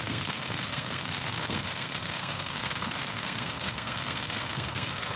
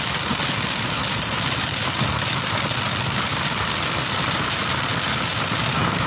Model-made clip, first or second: first